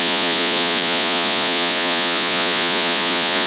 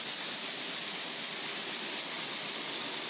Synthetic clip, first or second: first